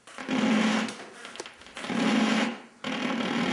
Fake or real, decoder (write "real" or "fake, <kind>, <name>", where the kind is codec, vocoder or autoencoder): real